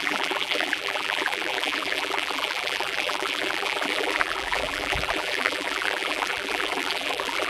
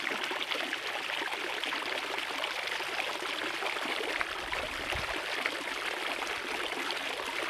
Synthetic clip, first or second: first